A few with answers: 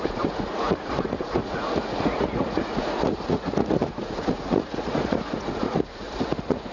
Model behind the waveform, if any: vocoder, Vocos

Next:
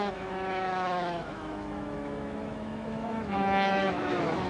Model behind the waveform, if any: autoencoder, DAC-VAE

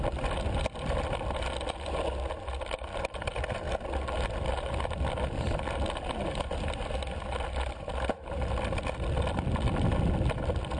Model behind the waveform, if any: none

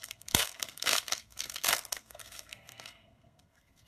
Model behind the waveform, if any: codec, SNAC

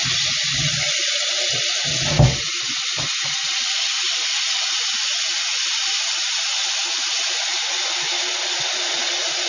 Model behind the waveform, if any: none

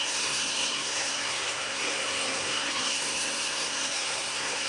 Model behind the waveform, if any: codec, SNAC